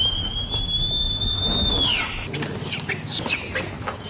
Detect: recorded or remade recorded